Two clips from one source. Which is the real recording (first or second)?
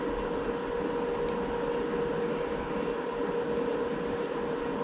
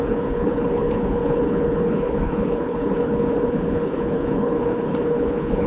first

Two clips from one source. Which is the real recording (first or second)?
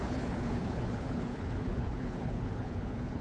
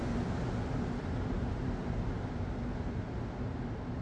second